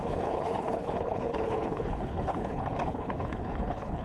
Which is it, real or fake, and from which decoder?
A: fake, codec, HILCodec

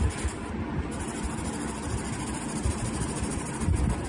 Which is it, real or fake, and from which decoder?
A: real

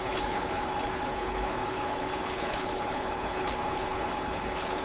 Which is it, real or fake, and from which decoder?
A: fake, codec, HILCodec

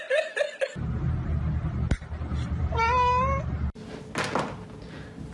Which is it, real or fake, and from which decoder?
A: real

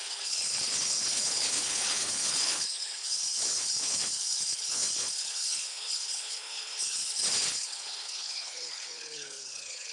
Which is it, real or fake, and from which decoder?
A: fake, codec, HILCodec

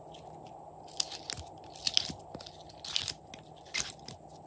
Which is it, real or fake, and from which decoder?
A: real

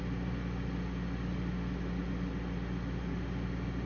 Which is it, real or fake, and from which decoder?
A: real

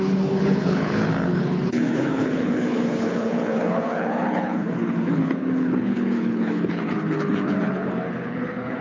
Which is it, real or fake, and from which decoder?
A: fake, codec, HILCodec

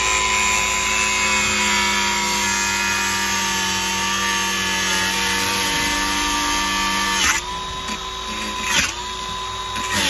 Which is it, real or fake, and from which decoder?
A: real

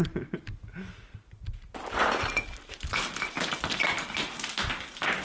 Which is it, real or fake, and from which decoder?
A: real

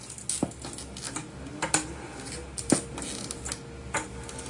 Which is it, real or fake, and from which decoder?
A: real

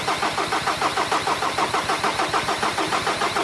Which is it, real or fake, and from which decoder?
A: real